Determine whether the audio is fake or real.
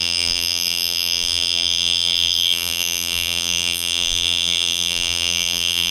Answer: fake